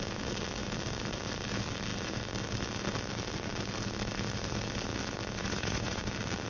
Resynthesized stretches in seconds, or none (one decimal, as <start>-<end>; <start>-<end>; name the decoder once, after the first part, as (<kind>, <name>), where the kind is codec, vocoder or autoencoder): 5.4-6.0 (vocoder, Vocos)